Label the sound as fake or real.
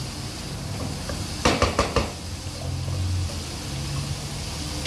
real